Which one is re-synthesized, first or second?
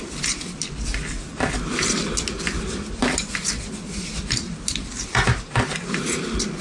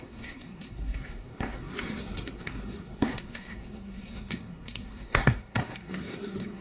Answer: second